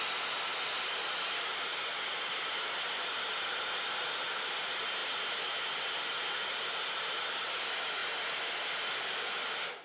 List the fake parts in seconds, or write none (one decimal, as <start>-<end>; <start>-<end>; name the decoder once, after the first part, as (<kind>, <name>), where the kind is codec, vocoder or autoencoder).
none